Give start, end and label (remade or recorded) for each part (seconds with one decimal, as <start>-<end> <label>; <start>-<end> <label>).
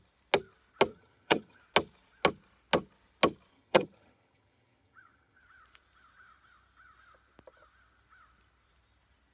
0.0-0.9 recorded; 0.9-1.6 remade; 1.6-3.5 recorded; 3.5-5.4 remade; 5.4-9.3 recorded